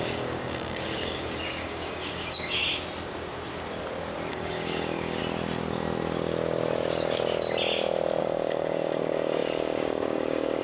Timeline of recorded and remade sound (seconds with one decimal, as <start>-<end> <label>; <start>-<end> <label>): 0.0-2.6 remade; 2.6-4.3 recorded; 4.3-5.2 remade; 5.2-8.2 recorded; 8.2-10.6 remade